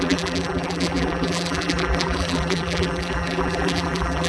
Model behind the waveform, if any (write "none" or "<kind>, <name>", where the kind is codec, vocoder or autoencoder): vocoder, BigVGAN v2